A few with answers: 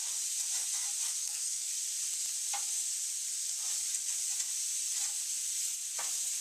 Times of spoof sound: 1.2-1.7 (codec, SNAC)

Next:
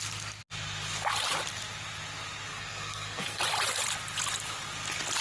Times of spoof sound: 2.5-3.4 (codec, SNAC)

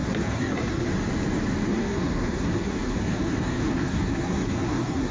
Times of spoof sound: 0.0-0.9 (codec, SNAC); 1.7-5.1

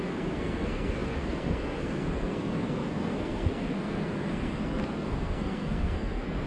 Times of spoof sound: 0.0-6.5 (codec, SNAC)